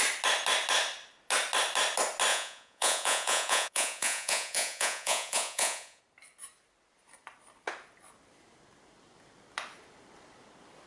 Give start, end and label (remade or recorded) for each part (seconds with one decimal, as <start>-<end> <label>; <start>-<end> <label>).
0.0-2.3 recorded; 2.3-6.0 remade; 6.0-10.9 recorded

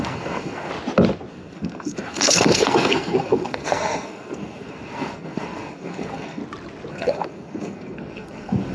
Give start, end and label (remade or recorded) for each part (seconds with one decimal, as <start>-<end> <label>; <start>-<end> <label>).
0.0-0.7 remade; 0.7-1.3 recorded; 1.3-6.4 remade; 6.4-6.9 recorded; 6.9-8.7 remade

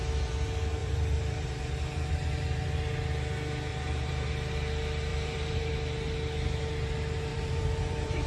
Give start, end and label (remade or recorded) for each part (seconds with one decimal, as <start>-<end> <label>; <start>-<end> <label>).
0.0-0.8 recorded; 0.8-2.1 remade; 2.1-3.7 recorded; 3.7-4.3 remade; 4.3-5.1 recorded; 5.1-5.7 remade; 5.7-7.3 recorded; 7.3-8.3 remade

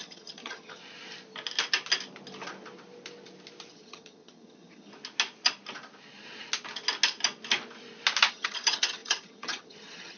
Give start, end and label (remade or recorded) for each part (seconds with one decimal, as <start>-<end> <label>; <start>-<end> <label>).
0.0-0.8 remade; 0.8-3.7 recorded; 3.7-4.9 remade; 4.9-8.3 recorded; 8.3-10.2 remade

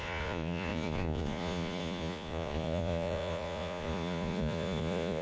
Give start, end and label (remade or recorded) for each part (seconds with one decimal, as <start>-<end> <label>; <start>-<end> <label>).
0.0-5.2 remade

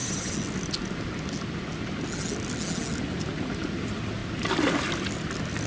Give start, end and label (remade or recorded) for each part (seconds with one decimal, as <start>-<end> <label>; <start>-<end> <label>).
0.0-3.4 recorded; 3.4-4.2 remade; 4.2-5.7 recorded

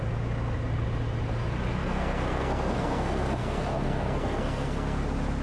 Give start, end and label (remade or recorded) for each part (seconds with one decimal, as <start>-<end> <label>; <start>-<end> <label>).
0.0-1.8 recorded; 1.8-5.0 remade; 5.0-5.4 recorded

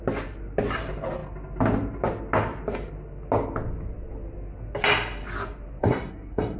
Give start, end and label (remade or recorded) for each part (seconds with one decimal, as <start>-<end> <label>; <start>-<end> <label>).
0.0-5.8 recorded; 5.8-6.6 remade